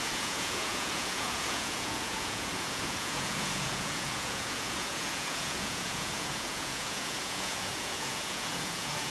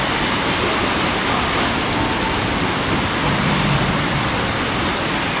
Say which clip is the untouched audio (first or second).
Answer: second